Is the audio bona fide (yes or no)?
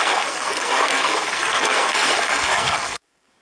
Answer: no